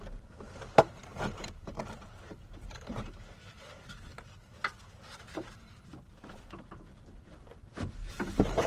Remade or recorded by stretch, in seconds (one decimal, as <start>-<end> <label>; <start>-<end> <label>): 0.0-4.1 remade; 4.1-5.0 recorded; 5.0-8.7 remade